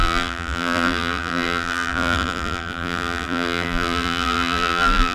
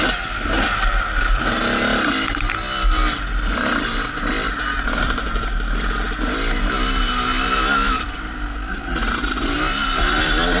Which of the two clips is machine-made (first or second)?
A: first